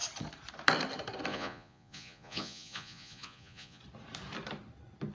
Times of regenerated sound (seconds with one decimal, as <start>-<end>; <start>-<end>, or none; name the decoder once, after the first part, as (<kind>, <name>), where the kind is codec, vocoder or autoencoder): 1.3-3.8 (vocoder, Vocos)